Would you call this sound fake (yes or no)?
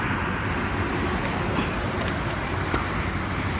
no